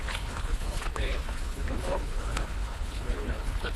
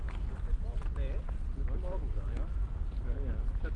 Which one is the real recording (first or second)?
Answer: second